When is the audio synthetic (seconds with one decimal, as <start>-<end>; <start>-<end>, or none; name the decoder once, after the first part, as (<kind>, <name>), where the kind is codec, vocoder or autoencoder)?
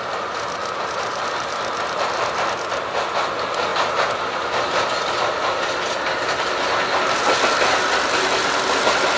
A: 0.6-2.4 (vocoder, BigVGAN v2)